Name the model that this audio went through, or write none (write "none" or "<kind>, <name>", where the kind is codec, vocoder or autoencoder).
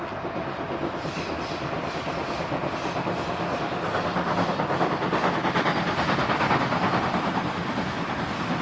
none